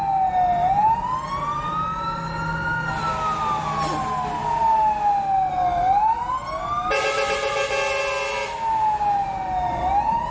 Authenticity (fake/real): real